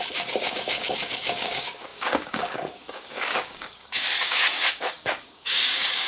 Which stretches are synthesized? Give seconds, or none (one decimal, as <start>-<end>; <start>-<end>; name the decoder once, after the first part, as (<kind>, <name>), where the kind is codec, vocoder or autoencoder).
0.0-6.1 (codec, DAC)